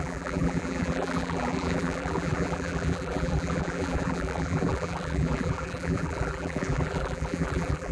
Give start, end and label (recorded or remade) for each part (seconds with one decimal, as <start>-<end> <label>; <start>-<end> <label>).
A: 0.0-7.9 remade